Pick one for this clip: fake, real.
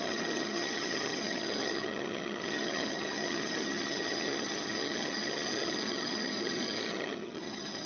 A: fake